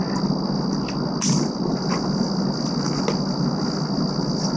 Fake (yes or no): no